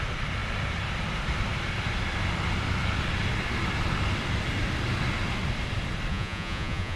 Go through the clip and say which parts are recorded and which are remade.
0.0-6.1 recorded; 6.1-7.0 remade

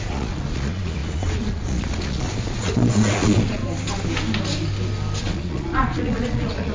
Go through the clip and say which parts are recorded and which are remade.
0.0-3.6 remade; 3.6-5.2 recorded; 5.2-6.7 remade

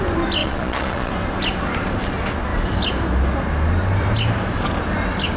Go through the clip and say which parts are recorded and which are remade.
0.0-0.4 recorded; 0.4-1.1 remade; 1.1-5.4 recorded